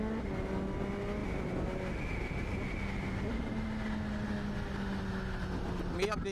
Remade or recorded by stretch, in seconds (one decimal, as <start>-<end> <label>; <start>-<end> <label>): 0.0-6.3 recorded